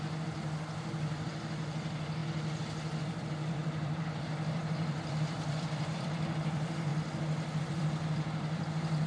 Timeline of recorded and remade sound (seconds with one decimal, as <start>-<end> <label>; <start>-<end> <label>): 0.0-2.2 remade; 2.2-3.0 recorded; 3.0-6.9 remade; 6.9-7.6 recorded; 7.6-9.1 remade